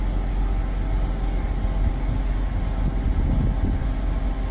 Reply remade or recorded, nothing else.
recorded